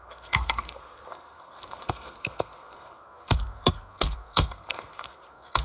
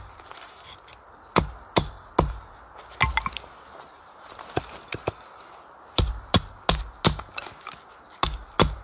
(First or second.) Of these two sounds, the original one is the second